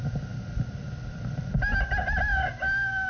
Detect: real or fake real